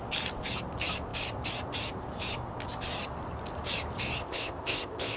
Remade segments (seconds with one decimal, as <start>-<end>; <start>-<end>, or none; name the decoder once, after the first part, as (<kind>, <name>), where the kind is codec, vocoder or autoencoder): 4.2-5.2 (codec, ZipCodec)